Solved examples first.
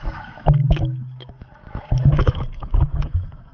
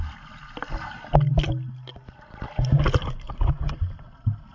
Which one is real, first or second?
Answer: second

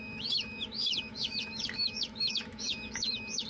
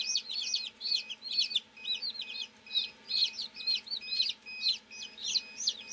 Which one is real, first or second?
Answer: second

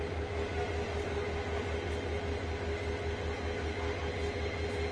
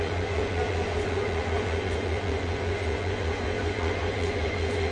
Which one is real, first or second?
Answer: first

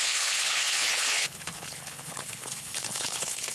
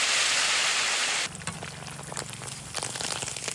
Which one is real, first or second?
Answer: second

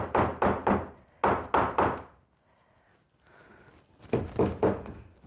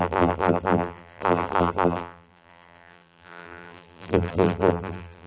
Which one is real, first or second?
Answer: first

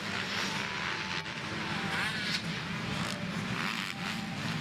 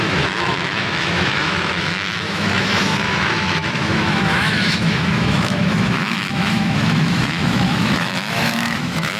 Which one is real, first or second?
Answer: first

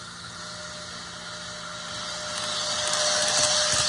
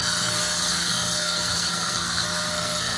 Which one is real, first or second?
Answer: first